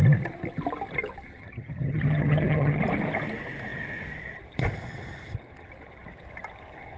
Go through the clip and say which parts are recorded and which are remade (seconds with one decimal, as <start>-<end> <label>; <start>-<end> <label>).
0.0-1.4 recorded; 1.4-2.8 remade; 2.8-7.0 recorded